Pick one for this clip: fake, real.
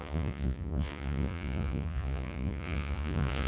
fake